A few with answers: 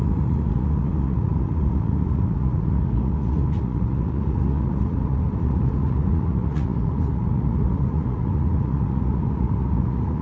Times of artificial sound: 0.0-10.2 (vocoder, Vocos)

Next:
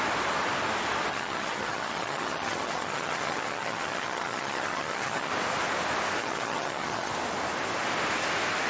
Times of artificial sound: 1.1-5.3 (vocoder, HiFi-GAN); 6.2-7.1

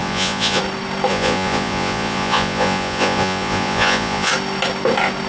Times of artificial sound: 0.0-0.6 (vocoder, Vocos); 1.1-4.3

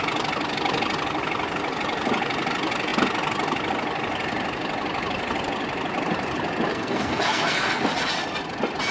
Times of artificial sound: 6.7-7.8 (codec, SNAC)

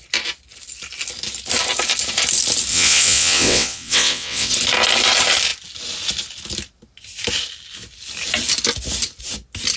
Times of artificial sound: 2.7-4.5 (vocoder, WaveNeXt)

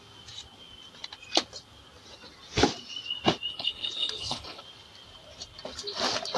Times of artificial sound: 3.5-4.6 (codec, HILCodec)

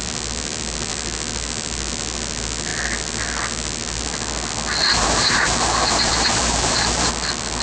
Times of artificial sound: 4.9-7.1 (vocoder, BigVGAN v2)